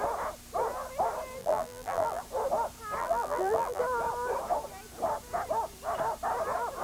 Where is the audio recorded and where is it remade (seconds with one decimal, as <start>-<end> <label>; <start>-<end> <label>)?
0.0-1.4 recorded; 1.4-2.2 remade; 2.2-3.0 recorded; 3.0-3.8 remade; 3.8-6.8 recorded